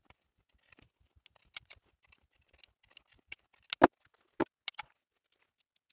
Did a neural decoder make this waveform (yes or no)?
no